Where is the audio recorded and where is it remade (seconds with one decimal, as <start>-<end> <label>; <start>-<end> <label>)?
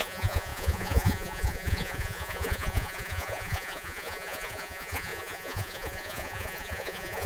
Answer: 0.0-7.3 remade